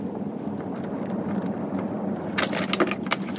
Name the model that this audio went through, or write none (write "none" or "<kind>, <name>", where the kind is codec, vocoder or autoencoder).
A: none